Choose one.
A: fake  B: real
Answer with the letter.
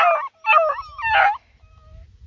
B